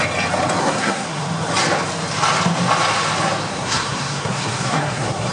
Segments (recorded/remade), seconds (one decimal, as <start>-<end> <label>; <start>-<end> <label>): 0.0-0.6 recorded; 0.6-1.2 remade; 1.2-3.5 recorded; 3.5-5.3 remade